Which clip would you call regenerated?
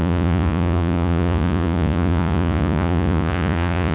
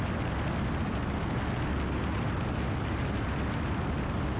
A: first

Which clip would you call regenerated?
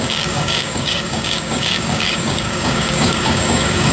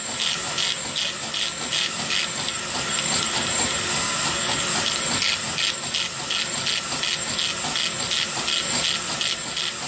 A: first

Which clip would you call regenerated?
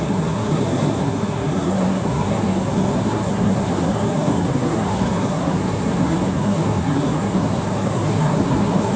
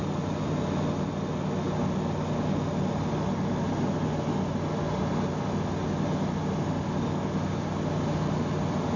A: first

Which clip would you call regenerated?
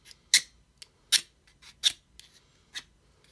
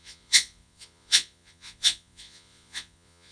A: second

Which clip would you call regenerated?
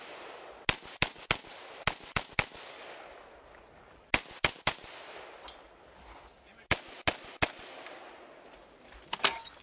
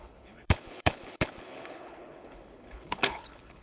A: second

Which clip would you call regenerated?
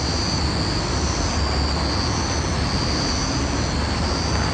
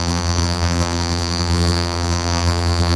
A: second